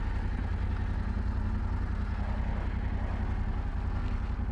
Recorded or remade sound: recorded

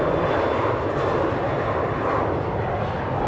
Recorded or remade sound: recorded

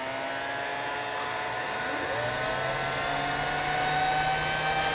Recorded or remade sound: recorded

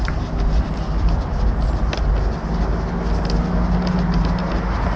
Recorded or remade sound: recorded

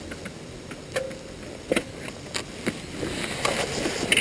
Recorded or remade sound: recorded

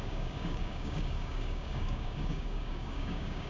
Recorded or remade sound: remade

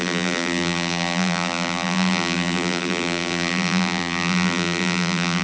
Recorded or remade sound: remade